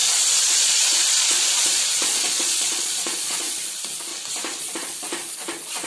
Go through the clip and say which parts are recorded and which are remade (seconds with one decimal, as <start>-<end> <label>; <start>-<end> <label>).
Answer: 0.0-4.1 remade; 4.1-4.6 recorded; 4.6-5.9 remade